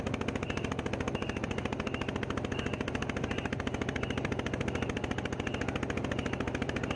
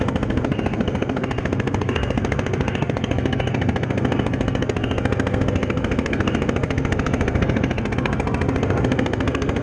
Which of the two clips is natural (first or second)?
first